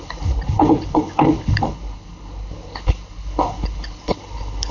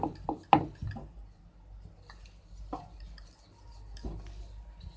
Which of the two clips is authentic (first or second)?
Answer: second